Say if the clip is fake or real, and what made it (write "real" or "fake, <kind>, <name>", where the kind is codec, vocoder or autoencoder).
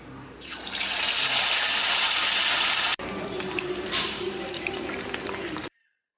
fake, vocoder, BigVGAN v2